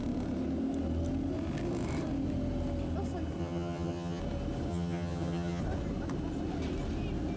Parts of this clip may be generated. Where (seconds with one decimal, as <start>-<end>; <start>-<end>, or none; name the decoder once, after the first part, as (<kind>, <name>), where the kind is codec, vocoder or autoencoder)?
3.4-4.2 (vocoder, HiFi-GAN); 4.7-5.6